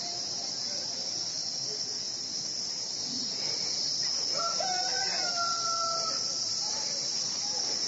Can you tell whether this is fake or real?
real